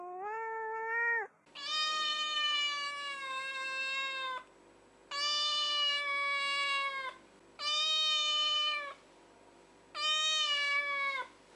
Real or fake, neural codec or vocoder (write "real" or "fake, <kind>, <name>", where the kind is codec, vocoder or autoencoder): real